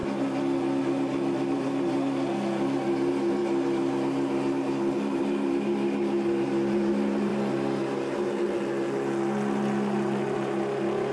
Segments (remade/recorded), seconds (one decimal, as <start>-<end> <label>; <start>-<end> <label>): 0.0-11.1 recorded